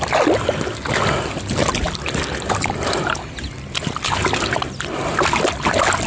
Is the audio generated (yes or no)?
no